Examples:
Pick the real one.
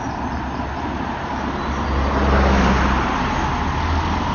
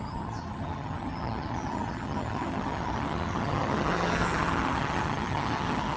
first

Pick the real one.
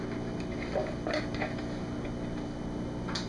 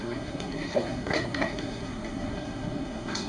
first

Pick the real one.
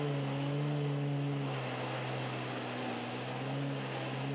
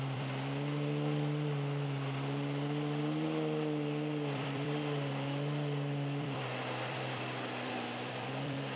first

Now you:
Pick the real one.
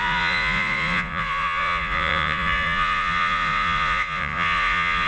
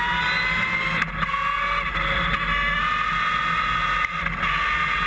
second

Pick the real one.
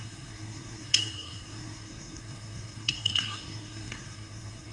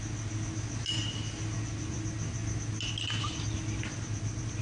second